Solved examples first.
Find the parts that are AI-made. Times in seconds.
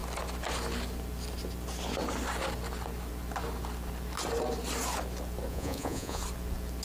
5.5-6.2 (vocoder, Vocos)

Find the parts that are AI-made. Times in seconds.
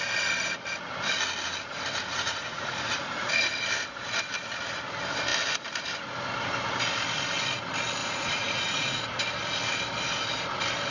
2.1-3.3 (vocoder, Vocos); 8.0-9.0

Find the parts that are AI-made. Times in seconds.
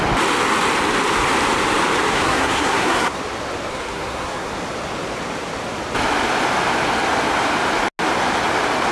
2.1-3.2 (codec, SNAC); 3.7-4.5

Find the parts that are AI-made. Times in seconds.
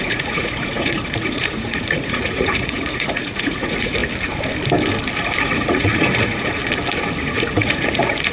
0.0-4.0 (vocoder, Vocos); 5.4-6.6; 7.2-8.3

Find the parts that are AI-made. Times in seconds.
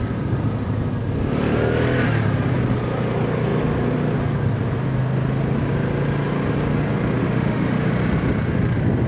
7.2-7.9 (autoencoder, DAC-VAE)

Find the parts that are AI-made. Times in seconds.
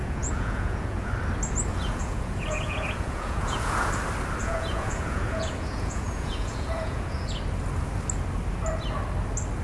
0.0-1.1 (vocoder, Vocos); 1.7-3.9; 4.4-7.4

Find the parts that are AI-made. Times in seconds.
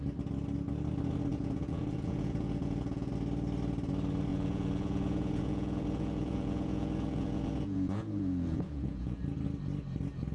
1.3-3.1 (vocoder, Vocos); 4.3-9.2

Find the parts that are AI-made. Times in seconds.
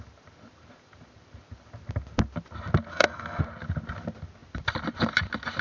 2.9-3.4 (codec, SNAC)